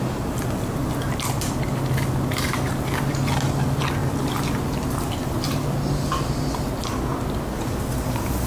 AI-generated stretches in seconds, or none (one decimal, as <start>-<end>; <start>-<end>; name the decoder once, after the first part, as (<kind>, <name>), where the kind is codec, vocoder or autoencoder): none